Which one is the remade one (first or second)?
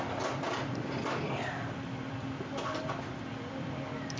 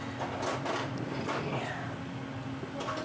first